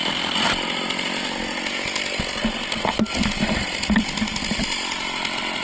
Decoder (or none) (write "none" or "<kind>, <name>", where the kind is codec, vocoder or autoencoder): none